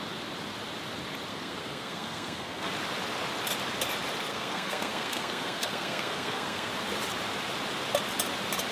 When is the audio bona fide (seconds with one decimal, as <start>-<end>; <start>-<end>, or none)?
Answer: 0.0-1.3; 2.7-4.3; 6.7-8.7